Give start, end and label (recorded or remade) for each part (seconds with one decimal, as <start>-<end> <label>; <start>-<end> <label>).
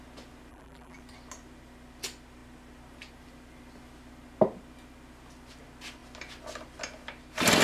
0.0-0.5 recorded; 0.5-1.0 remade; 1.0-7.6 recorded